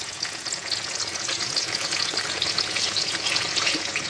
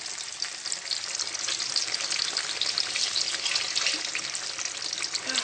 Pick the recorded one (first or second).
second